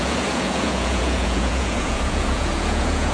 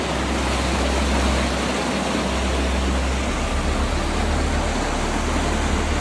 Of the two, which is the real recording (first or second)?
second